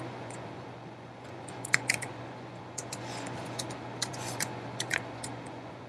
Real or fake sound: fake